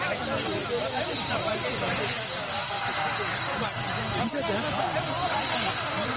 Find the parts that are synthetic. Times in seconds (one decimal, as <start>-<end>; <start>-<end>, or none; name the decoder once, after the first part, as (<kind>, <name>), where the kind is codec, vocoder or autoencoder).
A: none